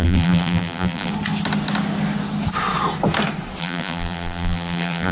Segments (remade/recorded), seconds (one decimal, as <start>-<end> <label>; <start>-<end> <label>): 0.0-1.1 remade; 1.1-3.6 recorded; 3.6-5.1 remade